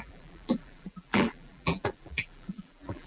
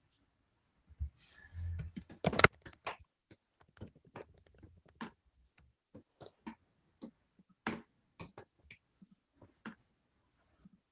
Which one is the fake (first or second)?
first